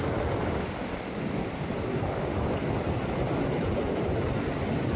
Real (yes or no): yes